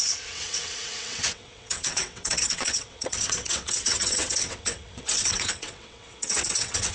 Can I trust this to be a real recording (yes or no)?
no